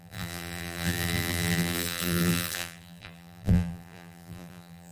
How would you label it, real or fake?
fake